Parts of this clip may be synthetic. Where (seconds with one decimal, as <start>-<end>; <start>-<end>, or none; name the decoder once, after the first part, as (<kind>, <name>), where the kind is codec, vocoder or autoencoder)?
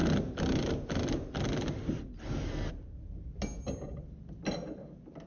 none